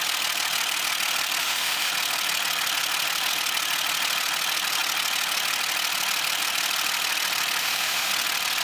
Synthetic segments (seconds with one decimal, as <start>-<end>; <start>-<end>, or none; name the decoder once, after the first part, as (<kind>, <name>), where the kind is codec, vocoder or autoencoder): 1.4-1.9 (autoencoder, DAC-VAE); 7.6-8.1